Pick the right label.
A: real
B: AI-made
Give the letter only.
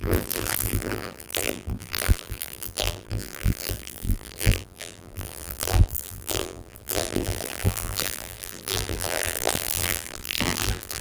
B